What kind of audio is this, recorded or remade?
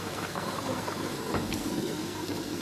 remade